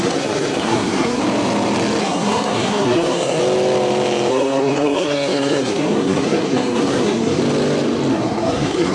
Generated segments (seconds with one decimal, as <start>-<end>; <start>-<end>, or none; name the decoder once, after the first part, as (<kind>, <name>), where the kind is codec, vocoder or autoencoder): 0.0-1.2 (codec, SNAC); 2.0-3.4; 4.3-7.4; 8.1-8.9